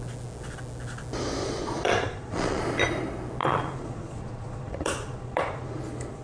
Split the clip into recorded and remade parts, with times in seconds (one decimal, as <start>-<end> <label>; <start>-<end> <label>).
0.0-1.4 recorded; 1.4-2.6 remade; 2.6-3.4 recorded; 3.4-5.8 remade; 5.8-6.2 recorded